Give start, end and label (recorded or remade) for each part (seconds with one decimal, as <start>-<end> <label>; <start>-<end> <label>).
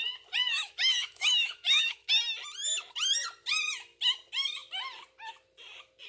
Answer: 0.0-0.4 recorded; 0.4-2.1 remade; 2.1-6.1 recorded